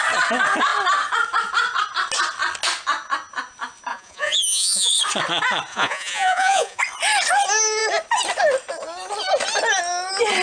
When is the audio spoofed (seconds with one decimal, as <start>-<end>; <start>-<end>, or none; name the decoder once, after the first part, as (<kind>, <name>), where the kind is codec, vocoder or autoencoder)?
3.9-4.9 (vocoder, Vocos); 5.7-6.8